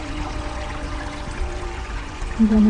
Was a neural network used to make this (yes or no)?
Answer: yes